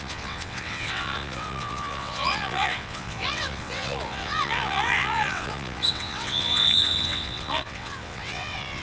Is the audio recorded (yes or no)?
no